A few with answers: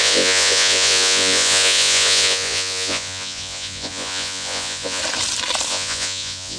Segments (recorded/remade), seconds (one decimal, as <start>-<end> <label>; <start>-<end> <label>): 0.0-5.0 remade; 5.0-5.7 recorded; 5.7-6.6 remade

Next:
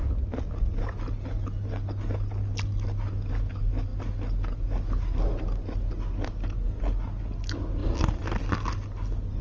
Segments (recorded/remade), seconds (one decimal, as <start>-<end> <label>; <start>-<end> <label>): 0.0-9.4 recorded

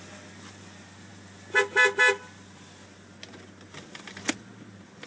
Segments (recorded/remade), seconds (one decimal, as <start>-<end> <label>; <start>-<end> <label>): 0.0-5.1 recorded

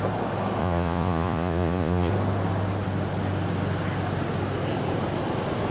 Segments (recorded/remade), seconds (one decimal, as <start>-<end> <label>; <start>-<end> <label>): 0.0-0.6 recorded; 0.6-2.1 remade; 2.1-5.7 recorded